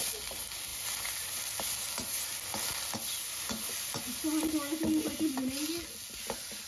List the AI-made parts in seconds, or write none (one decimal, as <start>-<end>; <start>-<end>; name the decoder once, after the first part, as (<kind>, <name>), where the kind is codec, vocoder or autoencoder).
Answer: none